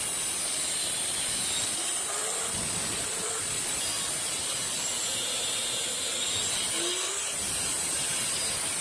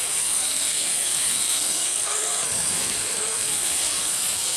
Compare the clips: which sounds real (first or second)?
first